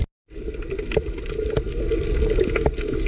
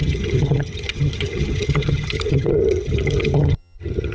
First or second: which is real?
first